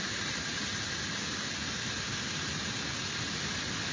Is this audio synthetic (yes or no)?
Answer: no